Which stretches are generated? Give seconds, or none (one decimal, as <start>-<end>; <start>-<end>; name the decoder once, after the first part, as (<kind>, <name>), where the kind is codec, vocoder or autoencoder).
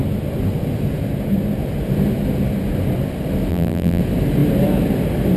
3.5-4.0 (vocoder, BigVGAN v2)